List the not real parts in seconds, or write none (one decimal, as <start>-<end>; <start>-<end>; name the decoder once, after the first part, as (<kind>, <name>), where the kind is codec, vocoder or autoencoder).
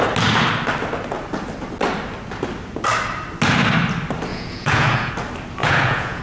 4.3-5.1 (vocoder, Vocos); 5.6-6.2